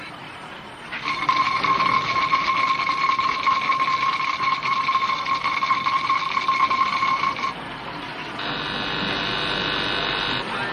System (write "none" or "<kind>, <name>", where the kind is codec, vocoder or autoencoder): none